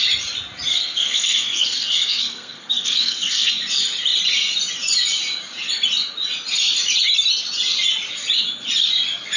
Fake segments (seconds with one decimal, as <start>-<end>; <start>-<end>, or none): 0.7-3.5